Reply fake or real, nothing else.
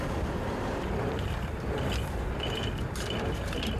real